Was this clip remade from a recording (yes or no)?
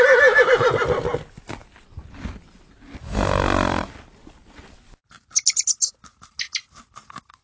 no